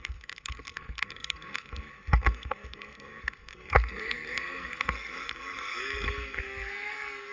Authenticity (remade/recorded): remade